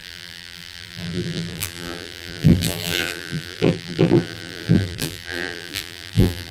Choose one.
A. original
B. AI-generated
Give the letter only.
B